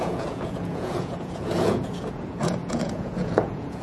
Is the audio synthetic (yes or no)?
yes